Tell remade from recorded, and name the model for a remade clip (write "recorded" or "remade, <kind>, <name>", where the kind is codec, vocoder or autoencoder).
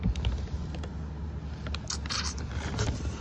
recorded